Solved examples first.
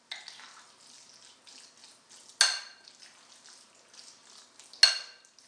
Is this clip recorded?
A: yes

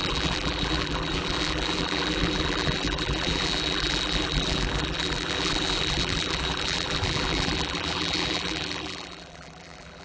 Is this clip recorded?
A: no